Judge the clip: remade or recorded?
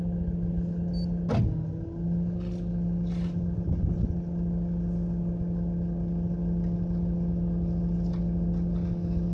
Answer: recorded